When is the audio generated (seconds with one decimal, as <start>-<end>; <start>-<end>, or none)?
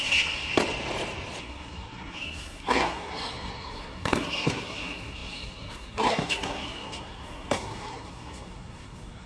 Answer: 0.0-0.5; 1.4-9.3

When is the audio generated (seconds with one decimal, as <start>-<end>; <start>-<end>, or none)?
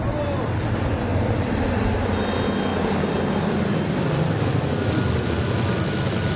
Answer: 1.1-2.2